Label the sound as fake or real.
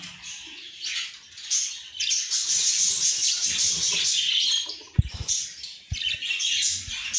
real